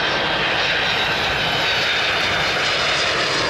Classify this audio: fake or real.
real